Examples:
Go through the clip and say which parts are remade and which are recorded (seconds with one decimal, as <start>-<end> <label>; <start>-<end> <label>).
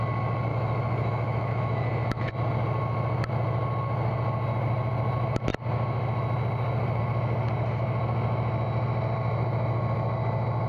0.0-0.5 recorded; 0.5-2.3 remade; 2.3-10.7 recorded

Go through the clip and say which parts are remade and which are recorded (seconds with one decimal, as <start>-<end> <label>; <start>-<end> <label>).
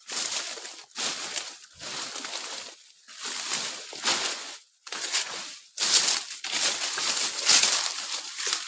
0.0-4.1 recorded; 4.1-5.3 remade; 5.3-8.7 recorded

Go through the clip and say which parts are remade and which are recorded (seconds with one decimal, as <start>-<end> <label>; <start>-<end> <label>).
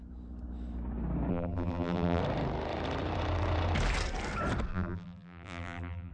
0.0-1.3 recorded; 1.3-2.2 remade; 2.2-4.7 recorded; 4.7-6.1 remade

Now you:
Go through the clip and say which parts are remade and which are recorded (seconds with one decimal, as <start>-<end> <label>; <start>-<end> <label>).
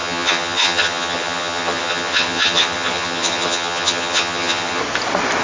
0.0-4.8 remade; 4.8-5.4 recorded